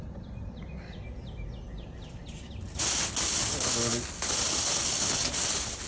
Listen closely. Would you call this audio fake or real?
real